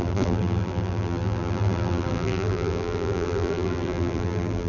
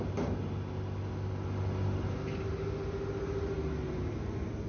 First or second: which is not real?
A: first